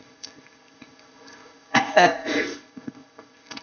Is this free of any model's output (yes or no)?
no